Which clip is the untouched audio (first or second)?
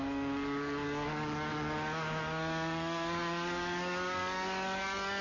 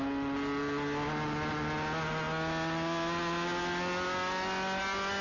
second